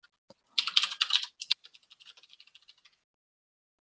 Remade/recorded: recorded